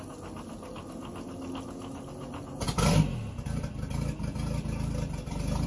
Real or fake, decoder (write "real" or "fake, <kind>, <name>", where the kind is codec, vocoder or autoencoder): real